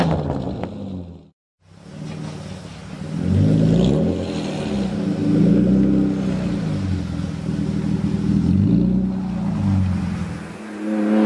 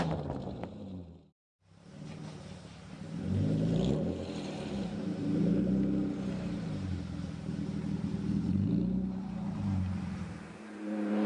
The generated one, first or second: second